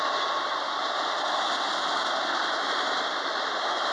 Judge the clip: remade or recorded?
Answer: recorded